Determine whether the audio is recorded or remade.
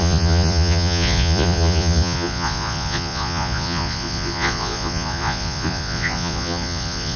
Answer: remade